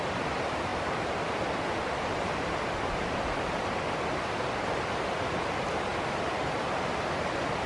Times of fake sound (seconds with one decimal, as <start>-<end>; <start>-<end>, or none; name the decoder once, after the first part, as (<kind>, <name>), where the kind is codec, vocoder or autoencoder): none